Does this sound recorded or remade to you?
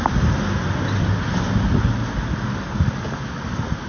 recorded